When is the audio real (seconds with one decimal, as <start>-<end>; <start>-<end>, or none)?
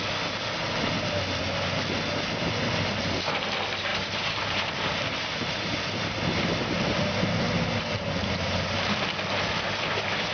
0.0-3.9; 7.0-10.3